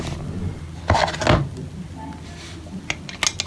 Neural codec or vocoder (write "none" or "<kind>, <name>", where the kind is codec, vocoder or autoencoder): none